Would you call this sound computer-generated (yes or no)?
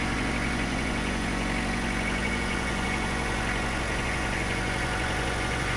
yes